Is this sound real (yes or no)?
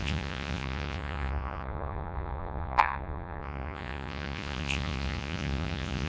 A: no